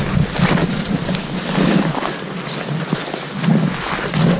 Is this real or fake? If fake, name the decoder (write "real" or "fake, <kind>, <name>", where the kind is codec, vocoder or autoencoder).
real